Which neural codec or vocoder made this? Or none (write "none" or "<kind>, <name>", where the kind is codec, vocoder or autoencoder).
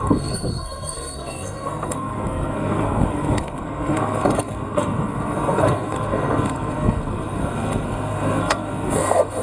codec, SNAC